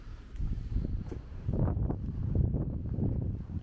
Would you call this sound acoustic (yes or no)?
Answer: no